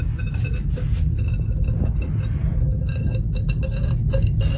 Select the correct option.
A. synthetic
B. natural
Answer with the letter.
B